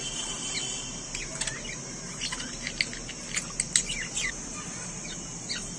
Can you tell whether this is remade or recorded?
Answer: recorded